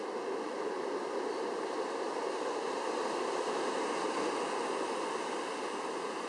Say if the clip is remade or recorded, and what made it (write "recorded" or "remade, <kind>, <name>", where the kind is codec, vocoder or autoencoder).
recorded